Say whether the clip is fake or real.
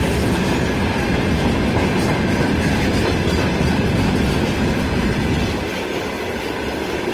real